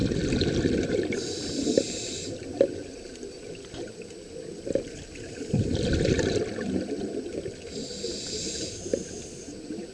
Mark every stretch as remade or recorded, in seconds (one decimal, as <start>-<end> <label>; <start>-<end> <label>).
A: 0.0-9.9 recorded